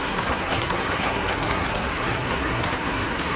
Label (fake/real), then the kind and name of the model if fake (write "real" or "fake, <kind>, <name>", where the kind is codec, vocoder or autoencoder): fake, codec, SNAC